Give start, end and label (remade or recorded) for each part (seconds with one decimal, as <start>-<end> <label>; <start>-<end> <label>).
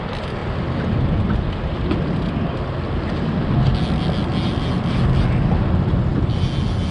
0.0-6.9 recorded